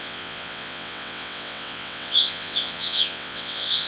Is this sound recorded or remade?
remade